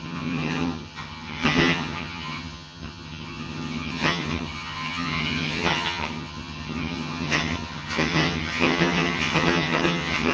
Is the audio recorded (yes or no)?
no